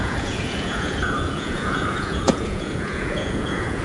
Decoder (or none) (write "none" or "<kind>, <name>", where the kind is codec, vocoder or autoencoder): vocoder, Vocos